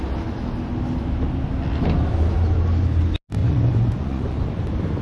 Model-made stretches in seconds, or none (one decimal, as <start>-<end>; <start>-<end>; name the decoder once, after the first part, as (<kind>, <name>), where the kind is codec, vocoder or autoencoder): 3.4-4.5 (vocoder, Vocos)